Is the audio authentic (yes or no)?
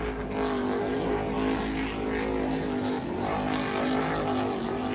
yes